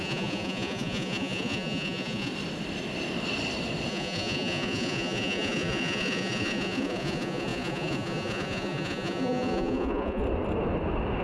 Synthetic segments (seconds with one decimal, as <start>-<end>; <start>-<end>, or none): 0.0-2.3; 3.9-10.2